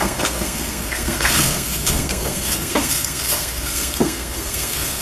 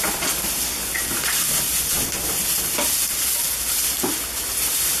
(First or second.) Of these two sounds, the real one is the second